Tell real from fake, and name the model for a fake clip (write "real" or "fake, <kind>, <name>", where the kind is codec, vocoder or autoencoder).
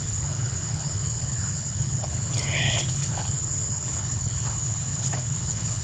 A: fake, codec, HILCodec